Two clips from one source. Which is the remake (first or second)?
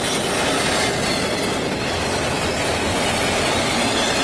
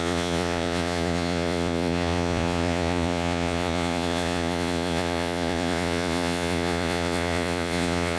second